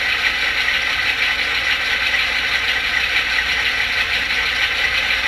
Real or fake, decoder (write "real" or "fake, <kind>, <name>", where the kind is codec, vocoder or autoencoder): real